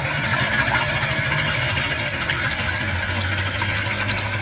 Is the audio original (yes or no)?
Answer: yes